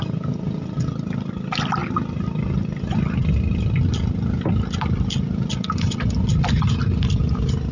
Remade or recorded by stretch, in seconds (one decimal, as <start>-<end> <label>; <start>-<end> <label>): 0.0-7.7 recorded